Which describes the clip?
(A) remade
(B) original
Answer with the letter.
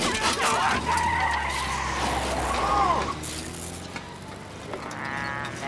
B